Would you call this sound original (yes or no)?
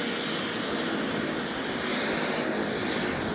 yes